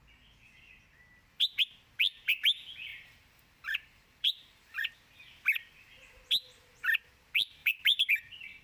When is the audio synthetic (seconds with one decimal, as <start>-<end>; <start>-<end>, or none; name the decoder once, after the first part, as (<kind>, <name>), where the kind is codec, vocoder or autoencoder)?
2.9-4.9 (vocoder, BigVGAN v2); 7.6-8.1